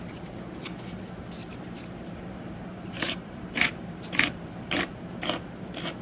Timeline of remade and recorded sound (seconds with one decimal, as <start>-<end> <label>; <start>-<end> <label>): 0.0-1.4 recorded; 1.4-5.0 remade; 5.0-6.0 recorded